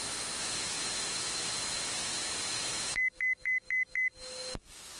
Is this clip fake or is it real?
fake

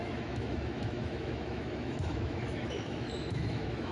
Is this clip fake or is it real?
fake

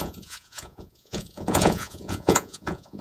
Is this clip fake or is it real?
fake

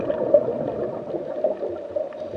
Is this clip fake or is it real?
real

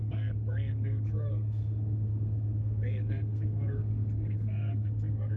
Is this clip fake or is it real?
fake